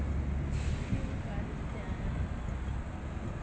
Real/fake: real